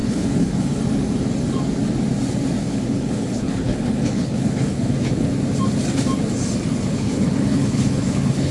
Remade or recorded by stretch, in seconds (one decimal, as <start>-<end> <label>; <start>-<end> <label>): 0.0-0.8 remade; 0.8-2.6 recorded; 2.6-5.3 remade; 5.3-6.9 recorded; 6.9-8.5 remade